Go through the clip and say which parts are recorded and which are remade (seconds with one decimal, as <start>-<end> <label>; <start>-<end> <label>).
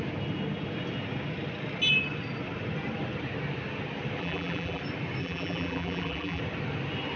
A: 0.0-4.2 recorded; 4.2-4.8 remade; 4.8-5.2 recorded; 5.2-6.4 remade; 6.4-7.2 recorded